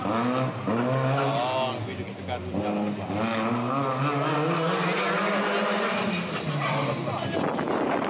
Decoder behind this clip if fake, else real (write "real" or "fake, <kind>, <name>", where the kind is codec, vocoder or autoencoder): real